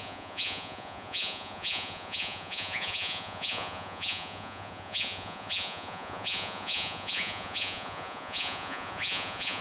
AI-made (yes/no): yes